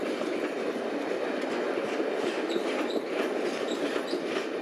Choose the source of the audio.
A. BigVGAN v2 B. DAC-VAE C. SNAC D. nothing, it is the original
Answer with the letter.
D